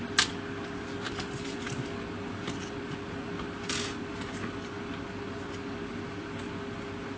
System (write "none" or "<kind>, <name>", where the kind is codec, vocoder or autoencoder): none